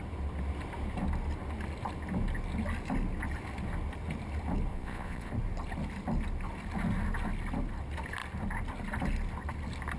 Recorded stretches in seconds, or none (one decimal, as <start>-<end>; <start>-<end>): 0.0-4.7; 5.3-10.0